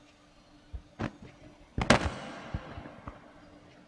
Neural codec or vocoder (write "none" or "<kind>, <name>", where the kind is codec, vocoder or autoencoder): none